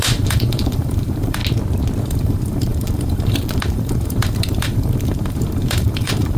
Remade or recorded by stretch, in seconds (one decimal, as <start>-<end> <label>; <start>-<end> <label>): 0.0-1.4 remade; 1.4-2.0 recorded; 2.0-6.4 remade